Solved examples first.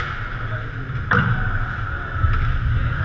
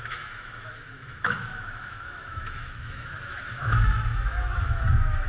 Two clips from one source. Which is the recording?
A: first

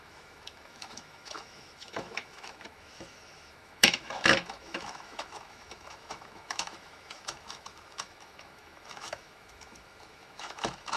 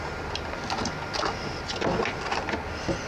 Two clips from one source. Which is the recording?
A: second